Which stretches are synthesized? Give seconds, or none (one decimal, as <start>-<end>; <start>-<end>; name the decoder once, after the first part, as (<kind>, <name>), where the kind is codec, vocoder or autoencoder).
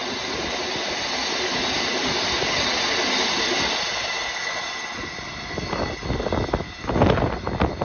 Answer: none